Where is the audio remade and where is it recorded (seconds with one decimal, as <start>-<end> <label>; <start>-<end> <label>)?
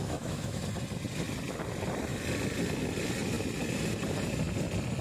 0.0-0.6 remade; 0.6-5.0 recorded